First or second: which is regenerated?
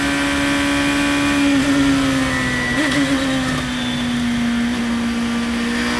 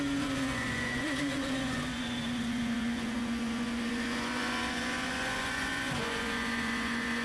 second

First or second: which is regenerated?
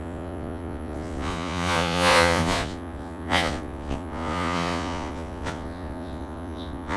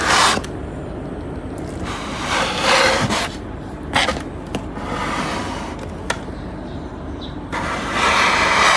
first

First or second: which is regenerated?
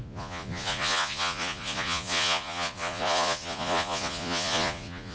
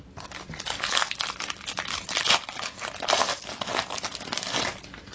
first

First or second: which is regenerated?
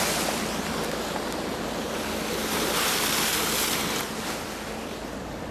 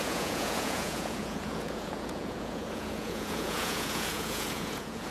second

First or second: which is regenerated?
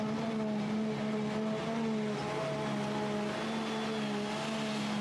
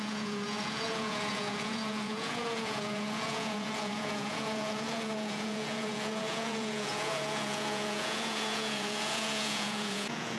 second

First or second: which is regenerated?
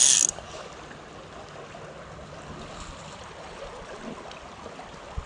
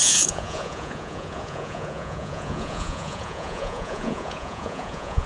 second